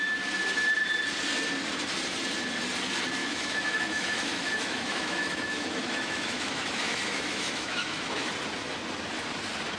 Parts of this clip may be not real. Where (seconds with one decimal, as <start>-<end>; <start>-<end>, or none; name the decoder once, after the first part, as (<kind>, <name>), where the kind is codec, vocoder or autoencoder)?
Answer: 3.2-8.3 (autoencoder, DAC-VAE)